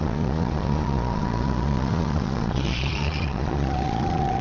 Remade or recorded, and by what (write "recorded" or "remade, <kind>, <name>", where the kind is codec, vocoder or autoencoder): remade, vocoder, Vocos